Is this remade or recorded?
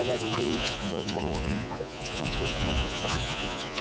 remade